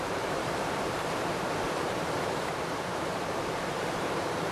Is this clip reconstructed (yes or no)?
yes